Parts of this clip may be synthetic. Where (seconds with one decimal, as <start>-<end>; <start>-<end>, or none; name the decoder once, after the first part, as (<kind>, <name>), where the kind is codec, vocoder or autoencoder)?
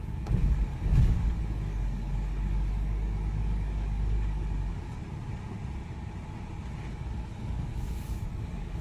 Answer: 0.0-5.0 (codec, DAC); 6.9-8.8